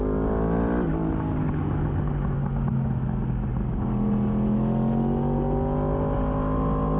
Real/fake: real